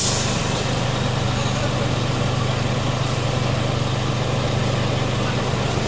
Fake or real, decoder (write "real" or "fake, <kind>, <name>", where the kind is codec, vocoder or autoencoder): real